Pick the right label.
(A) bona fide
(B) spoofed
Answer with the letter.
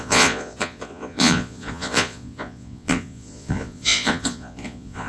B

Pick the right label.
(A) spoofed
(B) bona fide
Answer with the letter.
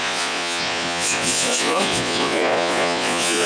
A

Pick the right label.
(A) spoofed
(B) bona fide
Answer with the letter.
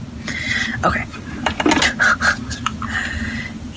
B